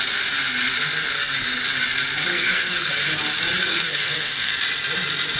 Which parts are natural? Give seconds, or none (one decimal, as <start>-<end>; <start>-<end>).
0.0-2.3; 2.9-3.7; 4.5-5.4